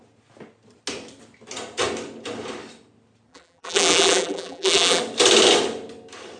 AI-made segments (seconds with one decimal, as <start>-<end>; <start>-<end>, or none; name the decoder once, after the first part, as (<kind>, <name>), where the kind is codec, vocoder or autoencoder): 3.3-5.0 (vocoder, BigVGAN v2)